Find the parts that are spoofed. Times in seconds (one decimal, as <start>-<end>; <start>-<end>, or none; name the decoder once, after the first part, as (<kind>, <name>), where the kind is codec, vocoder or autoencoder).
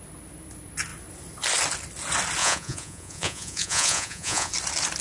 2.4-4.5 (vocoder, Vocos)